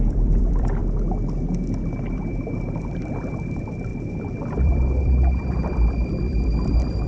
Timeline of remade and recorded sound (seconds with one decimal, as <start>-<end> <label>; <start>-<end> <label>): 0.0-0.8 remade; 0.8-2.1 recorded; 2.1-7.1 remade